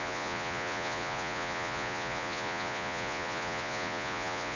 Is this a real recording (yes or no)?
no